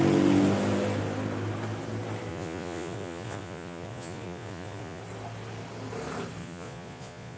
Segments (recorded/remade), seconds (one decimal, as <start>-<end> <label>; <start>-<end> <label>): 0.0-2.3 recorded; 2.3-5.0 remade; 5.0-6.4 recorded; 6.4-7.4 remade